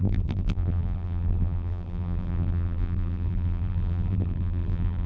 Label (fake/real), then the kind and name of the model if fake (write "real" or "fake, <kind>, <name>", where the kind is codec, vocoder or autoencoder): fake, vocoder, BigVGAN v2